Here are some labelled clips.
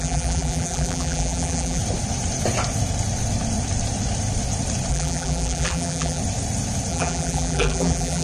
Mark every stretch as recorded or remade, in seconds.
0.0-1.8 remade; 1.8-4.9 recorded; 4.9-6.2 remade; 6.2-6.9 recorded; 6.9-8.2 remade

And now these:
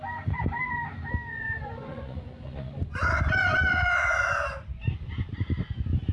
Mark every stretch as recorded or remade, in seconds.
0.0-1.3 recorded; 1.3-4.3 remade; 4.3-6.1 recorded

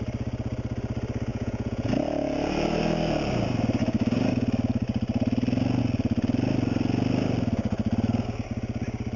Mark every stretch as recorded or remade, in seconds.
0.0-1.3 recorded; 1.3-1.9 remade; 1.9-9.2 recorded

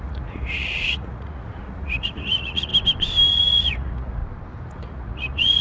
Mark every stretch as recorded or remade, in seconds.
0.0-2.7 remade; 2.7-3.3 recorded; 3.3-4.2 remade; 4.2-4.7 recorded; 4.7-5.6 remade